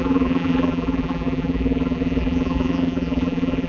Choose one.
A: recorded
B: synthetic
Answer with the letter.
B